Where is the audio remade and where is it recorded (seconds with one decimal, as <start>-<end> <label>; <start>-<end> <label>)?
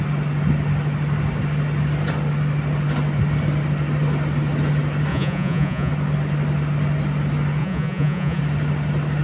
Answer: 0.0-5.1 recorded; 5.1-5.9 remade; 5.9-7.6 recorded; 7.6-8.4 remade; 8.4-9.2 recorded